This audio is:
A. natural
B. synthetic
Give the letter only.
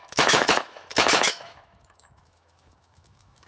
B